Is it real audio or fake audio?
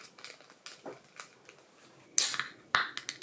real